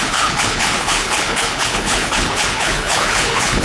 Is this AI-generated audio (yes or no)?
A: yes